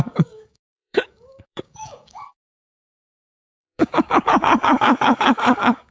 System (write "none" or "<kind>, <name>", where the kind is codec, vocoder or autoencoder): codec, DAC